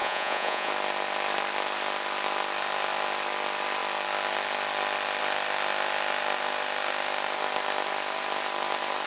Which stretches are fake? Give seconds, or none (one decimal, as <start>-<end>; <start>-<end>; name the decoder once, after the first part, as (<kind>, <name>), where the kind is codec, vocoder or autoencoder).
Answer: 0.0-0.7 (vocoder, Vocos)